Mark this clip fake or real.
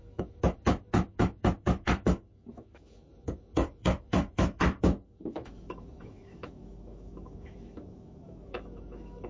fake